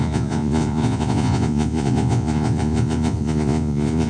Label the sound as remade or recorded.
remade